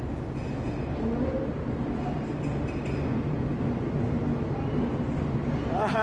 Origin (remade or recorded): recorded